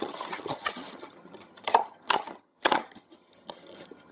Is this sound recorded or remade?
remade